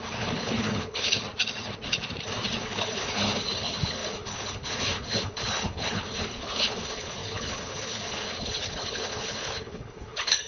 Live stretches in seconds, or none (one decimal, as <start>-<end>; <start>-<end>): 1.2-2.6

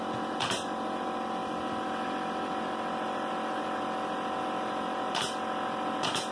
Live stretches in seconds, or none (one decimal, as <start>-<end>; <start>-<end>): 0.0-6.3